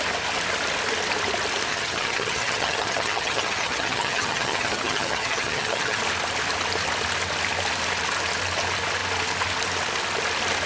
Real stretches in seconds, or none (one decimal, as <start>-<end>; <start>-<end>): 0.0-1.7; 6.0-10.7